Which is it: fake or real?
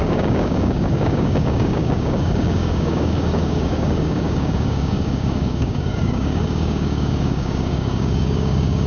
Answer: fake